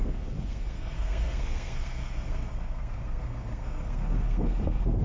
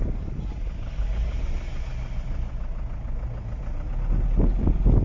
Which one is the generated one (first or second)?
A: first